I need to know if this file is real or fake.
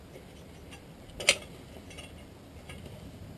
real